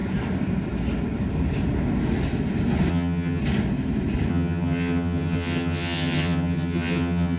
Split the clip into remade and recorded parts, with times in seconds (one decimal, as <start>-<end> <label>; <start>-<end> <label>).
0.0-2.9 recorded; 2.9-3.4 remade; 3.4-4.3 recorded; 4.3-7.4 remade